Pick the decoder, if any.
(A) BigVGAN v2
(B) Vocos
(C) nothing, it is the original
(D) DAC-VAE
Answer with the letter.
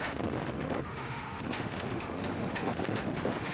D